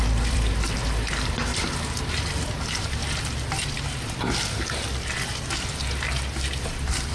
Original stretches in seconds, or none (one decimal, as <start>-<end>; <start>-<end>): 1.5-2.1; 3.0-6.2